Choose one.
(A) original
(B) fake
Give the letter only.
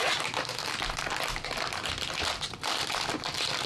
A